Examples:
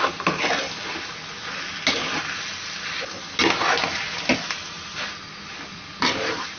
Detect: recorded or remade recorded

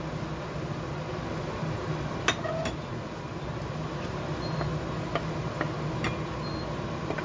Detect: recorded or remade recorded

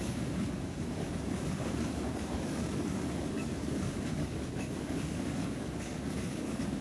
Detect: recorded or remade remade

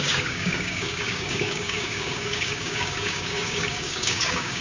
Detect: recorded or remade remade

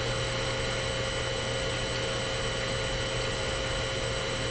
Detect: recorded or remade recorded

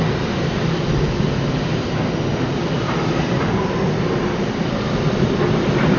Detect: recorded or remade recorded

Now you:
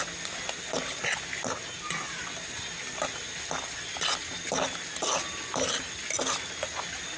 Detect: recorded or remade recorded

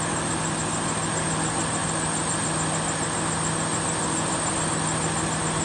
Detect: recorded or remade recorded